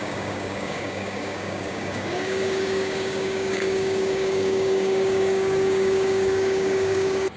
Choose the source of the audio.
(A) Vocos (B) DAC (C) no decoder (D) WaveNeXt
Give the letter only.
B